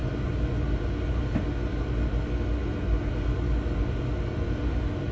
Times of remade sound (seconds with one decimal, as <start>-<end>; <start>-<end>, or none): none